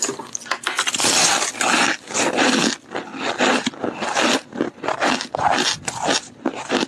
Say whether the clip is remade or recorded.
recorded